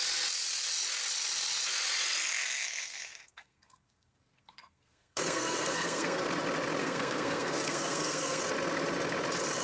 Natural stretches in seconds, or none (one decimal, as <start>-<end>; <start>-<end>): 0.0-2.3; 6.2-6.8; 8.4-9.6